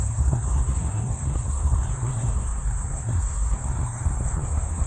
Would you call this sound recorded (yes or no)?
no